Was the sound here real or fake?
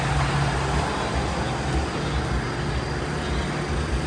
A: real